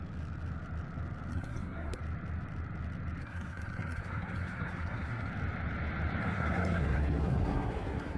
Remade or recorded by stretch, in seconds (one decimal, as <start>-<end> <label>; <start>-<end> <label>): 0.0-1.3 recorded; 1.3-2.0 remade; 2.0-3.2 recorded; 3.2-5.3 remade; 5.3-6.2 recorded; 6.2-8.2 remade